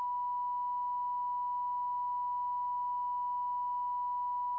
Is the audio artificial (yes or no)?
no